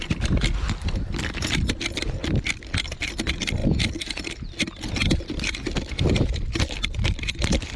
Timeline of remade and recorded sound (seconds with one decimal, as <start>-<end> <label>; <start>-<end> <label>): 0.0-7.8 recorded